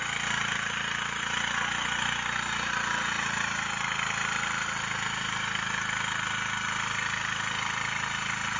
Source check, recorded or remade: recorded